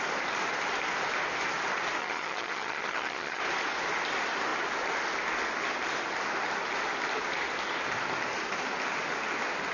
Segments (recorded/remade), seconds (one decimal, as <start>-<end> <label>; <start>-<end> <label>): 0.0-2.0 recorded; 2.0-3.4 remade; 3.4-9.7 recorded